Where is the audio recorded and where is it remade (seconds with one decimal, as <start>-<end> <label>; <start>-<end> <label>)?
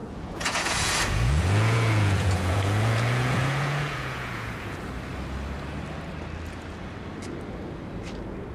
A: 0.0-4.8 remade; 4.8-8.5 recorded